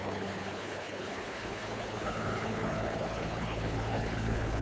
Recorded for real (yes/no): no